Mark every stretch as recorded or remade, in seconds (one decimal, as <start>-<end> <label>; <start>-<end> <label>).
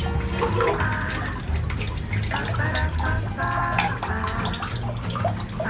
0.0-5.7 recorded